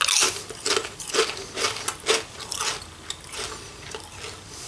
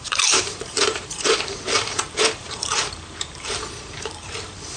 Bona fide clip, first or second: first